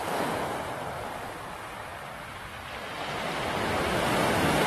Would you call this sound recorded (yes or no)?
no